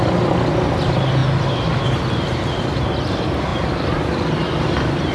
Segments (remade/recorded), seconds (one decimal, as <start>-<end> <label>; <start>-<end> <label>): 0.0-1.2 recorded; 1.2-1.8 remade; 1.8-3.5 recorded; 3.5-5.1 remade